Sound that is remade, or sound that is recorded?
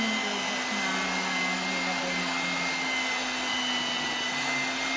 recorded